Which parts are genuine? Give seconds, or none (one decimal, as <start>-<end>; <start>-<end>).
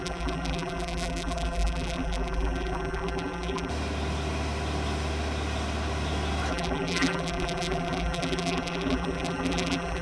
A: 3.7-6.5